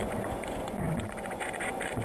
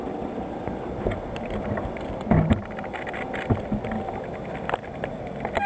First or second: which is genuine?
second